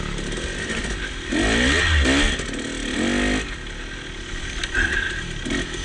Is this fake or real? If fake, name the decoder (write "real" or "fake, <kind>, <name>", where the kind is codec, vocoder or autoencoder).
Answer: real